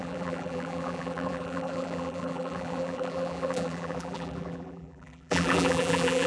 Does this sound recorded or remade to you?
remade